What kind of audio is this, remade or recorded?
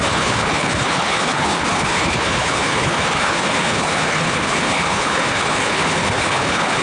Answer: remade